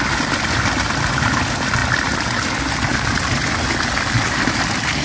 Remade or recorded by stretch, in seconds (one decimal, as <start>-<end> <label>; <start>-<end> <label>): 0.0-5.0 recorded